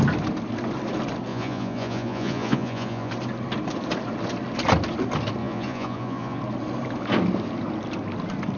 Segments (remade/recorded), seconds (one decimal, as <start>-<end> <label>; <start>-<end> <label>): 0.0-1.3 recorded; 1.3-3.1 remade; 3.1-5.4 recorded; 5.4-6.4 remade; 6.4-8.6 recorded